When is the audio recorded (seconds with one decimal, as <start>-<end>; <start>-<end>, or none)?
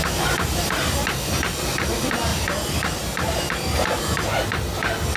0.7-2.3; 4.0-5.2